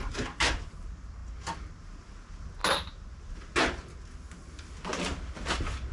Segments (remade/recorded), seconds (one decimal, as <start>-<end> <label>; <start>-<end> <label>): 0.0-5.9 recorded